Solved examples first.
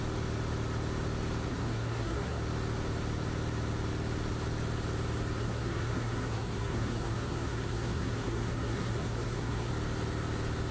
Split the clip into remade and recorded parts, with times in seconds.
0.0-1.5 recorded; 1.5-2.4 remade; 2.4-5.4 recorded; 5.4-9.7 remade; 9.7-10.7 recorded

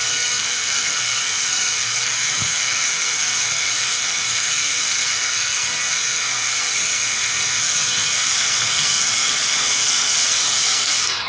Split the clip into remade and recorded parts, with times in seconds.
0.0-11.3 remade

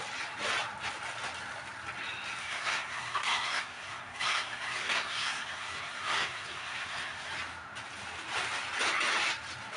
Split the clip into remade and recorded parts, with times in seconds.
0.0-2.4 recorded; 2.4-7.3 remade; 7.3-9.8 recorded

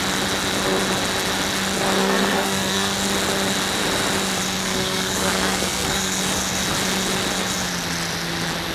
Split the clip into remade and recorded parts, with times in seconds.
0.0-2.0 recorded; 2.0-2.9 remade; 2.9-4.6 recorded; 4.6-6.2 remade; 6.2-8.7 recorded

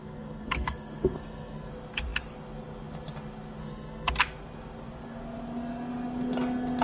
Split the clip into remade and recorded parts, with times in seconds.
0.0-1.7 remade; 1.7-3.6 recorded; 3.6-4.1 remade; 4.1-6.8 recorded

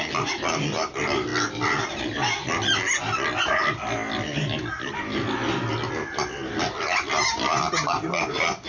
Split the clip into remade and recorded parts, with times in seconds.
0.0-8.7 recorded

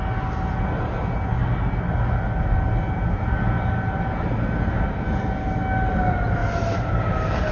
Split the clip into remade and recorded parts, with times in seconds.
0.0-7.5 recorded

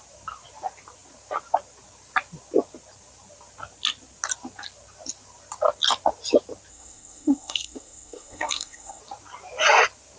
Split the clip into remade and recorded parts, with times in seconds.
0.0-6.7 recorded; 6.7-9.0 remade; 9.0-10.2 recorded